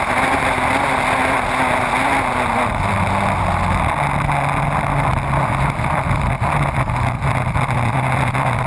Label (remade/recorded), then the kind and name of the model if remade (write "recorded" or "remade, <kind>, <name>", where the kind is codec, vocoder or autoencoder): recorded